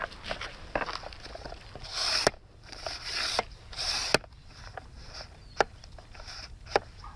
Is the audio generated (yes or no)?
no